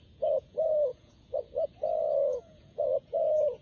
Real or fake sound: fake